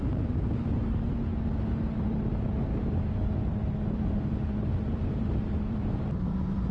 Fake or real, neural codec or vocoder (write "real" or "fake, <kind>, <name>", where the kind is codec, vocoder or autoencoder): fake, vocoder, BigVGAN v2